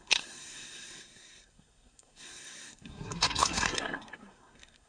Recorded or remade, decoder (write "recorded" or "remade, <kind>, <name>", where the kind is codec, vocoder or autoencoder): remade, codec, SNAC